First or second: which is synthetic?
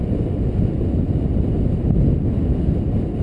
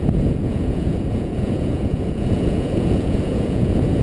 second